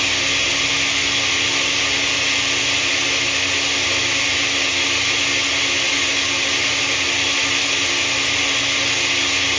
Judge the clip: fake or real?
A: real